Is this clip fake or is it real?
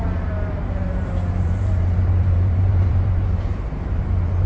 fake